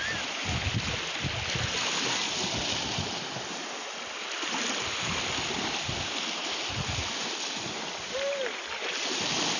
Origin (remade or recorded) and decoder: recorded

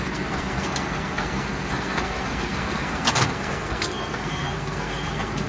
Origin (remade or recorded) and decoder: remade, codec, SNAC